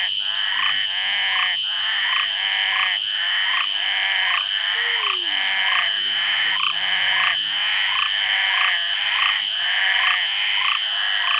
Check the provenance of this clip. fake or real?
real